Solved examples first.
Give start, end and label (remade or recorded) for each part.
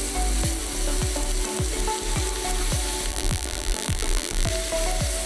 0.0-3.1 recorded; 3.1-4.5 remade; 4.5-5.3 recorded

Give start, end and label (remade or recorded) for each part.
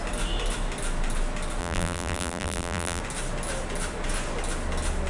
0.0-1.6 recorded; 1.6-3.0 remade; 3.0-5.1 recorded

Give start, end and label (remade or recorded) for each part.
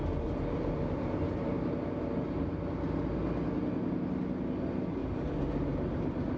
0.0-1.7 remade; 1.7-6.4 recorded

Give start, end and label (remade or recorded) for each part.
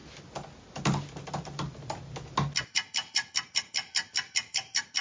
0.0-5.0 recorded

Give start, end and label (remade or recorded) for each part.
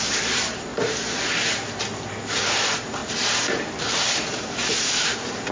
0.0-0.7 remade; 0.7-1.4 recorded; 1.4-5.5 remade